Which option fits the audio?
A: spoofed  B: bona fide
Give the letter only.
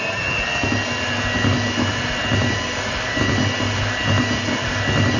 B